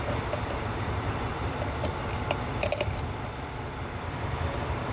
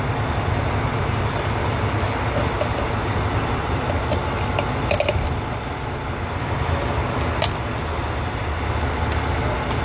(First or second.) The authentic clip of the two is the second